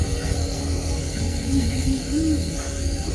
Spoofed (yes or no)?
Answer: yes